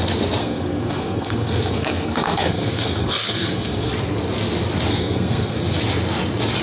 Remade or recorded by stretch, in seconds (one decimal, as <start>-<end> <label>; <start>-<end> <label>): 0.0-0.4 recorded; 0.4-3.9 remade; 3.9-4.9 recorded; 4.9-5.8 remade; 5.8-6.6 recorded